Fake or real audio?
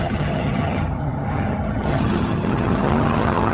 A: fake